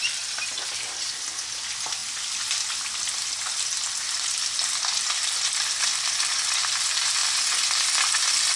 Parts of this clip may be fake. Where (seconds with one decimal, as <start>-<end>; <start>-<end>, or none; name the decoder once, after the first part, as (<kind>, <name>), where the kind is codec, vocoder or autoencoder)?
0.0-7.2 (vocoder, BigVGAN v2); 7.8-8.6